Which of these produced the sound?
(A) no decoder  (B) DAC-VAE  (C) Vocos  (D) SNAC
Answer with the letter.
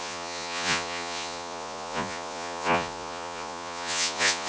C